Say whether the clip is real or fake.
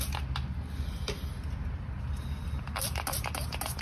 real